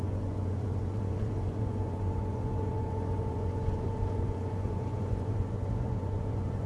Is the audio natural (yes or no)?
no